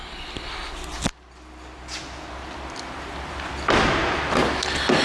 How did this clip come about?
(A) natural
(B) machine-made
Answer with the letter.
A